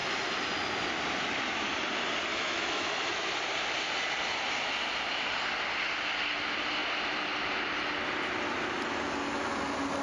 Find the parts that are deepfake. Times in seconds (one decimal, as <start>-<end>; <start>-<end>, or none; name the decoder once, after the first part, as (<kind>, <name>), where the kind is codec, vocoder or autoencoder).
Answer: 2.3-3.3 (autoencoder, DAC-VAE)